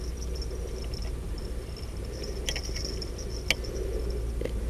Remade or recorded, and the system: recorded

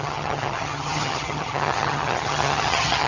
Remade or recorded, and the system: remade, vocoder, HiFi-GAN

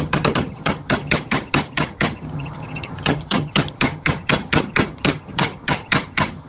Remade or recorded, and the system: remade, vocoder, HiFi-GAN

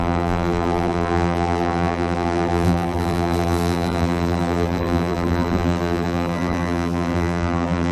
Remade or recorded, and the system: remade, vocoder, BigVGAN v2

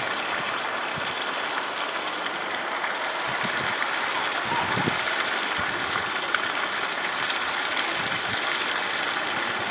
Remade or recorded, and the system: recorded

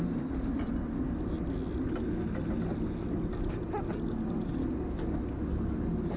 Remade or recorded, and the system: recorded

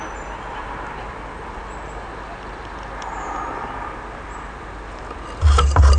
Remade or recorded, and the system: recorded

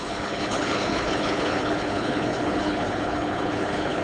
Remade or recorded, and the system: remade, codec, HILCodec